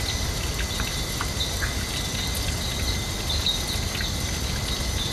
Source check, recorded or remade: recorded